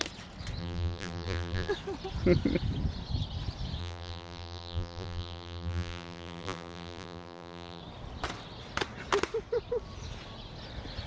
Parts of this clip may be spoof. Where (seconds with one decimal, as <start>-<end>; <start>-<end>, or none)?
0.6-1.7; 3.8-7.8